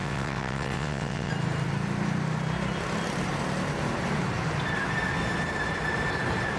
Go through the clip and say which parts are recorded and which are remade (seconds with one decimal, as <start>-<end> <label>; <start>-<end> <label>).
0.0-1.3 remade; 1.3-6.6 recorded